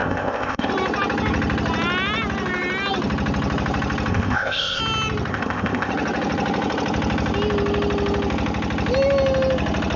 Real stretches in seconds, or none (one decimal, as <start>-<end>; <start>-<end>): 0.7-4.1; 4.8-5.3; 5.9-10.0